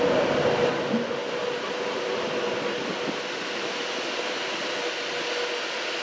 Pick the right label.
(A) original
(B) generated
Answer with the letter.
A